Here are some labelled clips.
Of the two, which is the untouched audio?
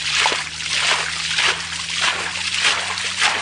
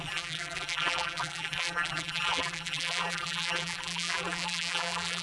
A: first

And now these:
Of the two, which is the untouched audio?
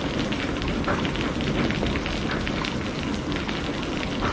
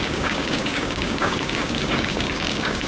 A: first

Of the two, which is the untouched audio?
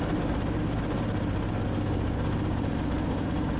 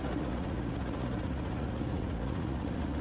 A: first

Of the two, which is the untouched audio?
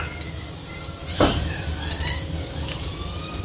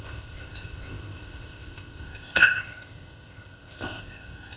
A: first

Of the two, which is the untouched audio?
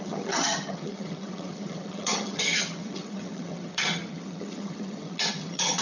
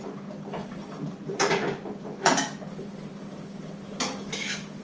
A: second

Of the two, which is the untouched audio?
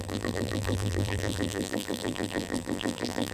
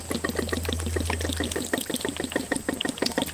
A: second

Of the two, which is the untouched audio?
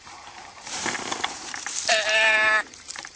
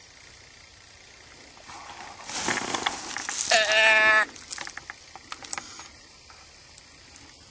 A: second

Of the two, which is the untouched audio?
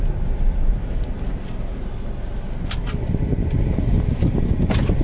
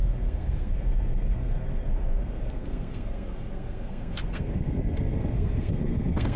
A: first